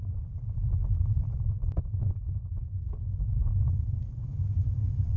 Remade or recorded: recorded